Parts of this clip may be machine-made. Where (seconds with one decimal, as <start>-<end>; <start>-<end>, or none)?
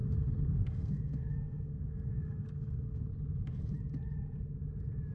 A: 0.0-3.1